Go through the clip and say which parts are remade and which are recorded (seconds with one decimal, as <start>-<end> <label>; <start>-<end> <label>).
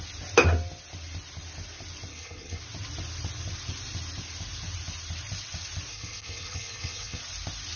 0.0-2.1 recorded; 2.1-2.6 remade; 2.6-5.9 recorded; 5.9-7.2 remade; 7.2-7.8 recorded